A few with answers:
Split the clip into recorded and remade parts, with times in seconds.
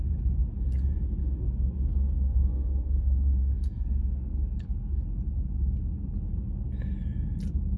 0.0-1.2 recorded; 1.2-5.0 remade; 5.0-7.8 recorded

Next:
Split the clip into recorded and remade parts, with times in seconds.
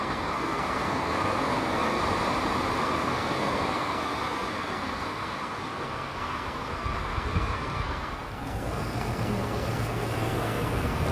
0.0-2.0 remade; 2.0-2.8 recorded; 2.8-11.1 remade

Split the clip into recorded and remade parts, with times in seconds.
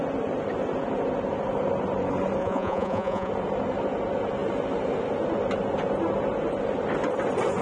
0.0-2.4 recorded; 2.4-3.3 remade; 3.3-7.6 recorded